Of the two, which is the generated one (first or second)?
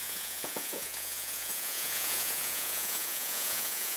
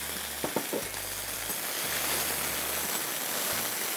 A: first